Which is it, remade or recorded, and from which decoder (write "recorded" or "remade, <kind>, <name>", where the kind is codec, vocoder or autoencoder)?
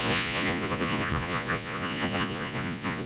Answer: remade, vocoder, Vocos